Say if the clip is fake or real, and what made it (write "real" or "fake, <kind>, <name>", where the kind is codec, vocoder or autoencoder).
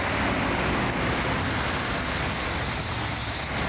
real